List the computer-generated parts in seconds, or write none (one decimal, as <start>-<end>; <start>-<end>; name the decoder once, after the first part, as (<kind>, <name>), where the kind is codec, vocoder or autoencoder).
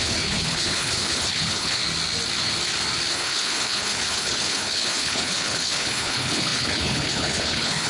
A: 0.0-1.8 (codec, HILCodec); 3.1-7.9